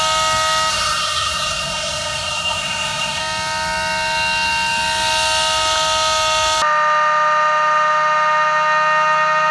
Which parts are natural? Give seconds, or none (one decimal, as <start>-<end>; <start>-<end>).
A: 0.0-0.7; 3.2-9.5